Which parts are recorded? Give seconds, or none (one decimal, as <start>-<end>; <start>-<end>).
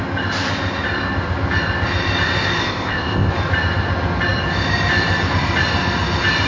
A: 0.0-2.6; 3.3-6.5